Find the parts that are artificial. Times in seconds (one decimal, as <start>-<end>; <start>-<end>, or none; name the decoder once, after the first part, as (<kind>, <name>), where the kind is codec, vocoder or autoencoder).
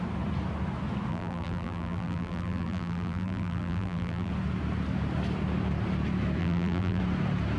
1.1-4.3 (vocoder, BigVGAN v2); 6.4-7.0